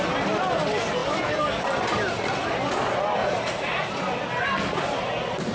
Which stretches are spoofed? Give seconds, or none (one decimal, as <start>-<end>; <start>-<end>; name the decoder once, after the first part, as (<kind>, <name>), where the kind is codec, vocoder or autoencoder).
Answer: 3.2-3.9 (vocoder, Vocos)